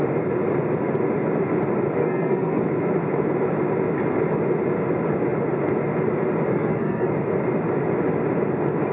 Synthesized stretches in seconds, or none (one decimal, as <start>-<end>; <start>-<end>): 2.0-2.6; 6.5-7.1